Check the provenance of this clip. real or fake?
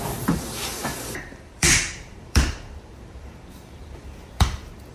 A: fake